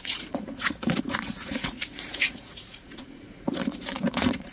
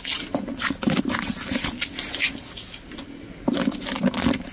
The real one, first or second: second